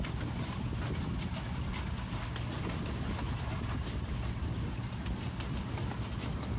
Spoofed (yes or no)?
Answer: no